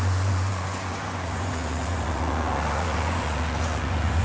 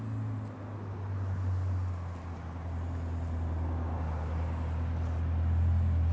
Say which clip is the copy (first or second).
first